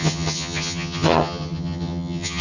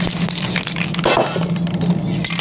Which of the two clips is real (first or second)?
second